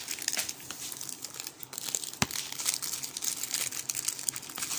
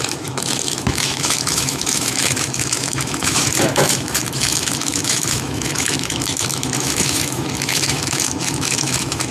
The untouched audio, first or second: first